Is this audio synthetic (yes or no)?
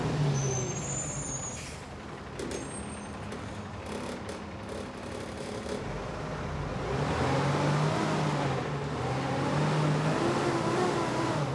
no